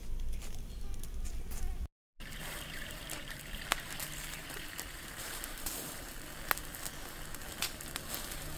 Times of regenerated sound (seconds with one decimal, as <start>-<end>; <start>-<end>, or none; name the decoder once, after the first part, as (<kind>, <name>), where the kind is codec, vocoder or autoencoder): 2.1-6.1 (vocoder, BigVGAN v2)